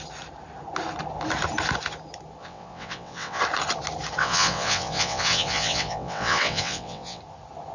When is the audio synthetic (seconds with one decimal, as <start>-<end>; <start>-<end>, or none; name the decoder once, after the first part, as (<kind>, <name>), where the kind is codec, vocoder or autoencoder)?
2.4-3.4 (vocoder, WaveNeXt); 4.2-7.2